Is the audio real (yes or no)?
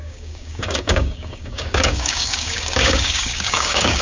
no